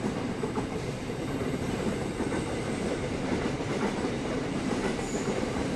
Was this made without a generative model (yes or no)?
no